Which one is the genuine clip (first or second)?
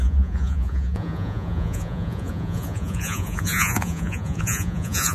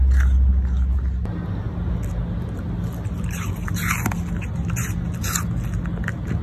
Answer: second